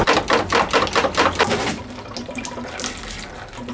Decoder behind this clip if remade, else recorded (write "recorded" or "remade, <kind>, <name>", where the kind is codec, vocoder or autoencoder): recorded